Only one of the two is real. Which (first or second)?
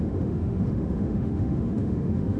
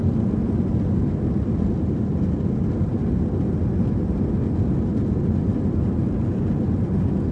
second